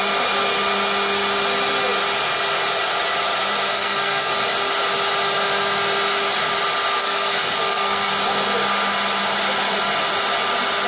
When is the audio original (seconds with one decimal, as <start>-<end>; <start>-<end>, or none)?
0.0-3.7; 4.3-7.0; 8.1-10.9